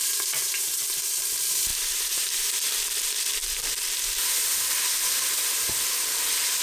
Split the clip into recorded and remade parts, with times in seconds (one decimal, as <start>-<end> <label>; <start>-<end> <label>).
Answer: 0.0-1.7 recorded; 1.7-2.7 remade; 2.7-6.6 recorded